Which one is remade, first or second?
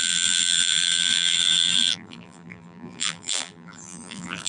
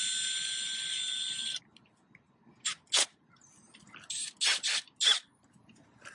first